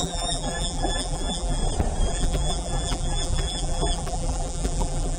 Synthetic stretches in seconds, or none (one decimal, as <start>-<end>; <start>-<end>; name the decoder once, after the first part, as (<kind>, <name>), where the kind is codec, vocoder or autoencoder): 0.0-1.6 (vocoder, BigVGAN v2); 2.1-5.2